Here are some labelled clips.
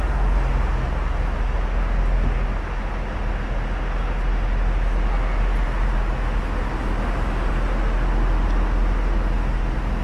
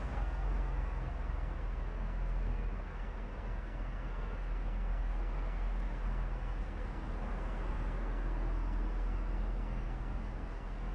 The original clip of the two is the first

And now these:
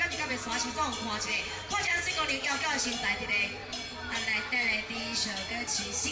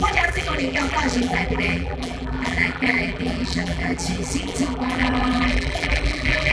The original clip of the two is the first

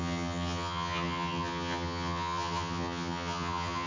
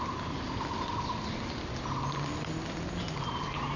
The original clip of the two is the second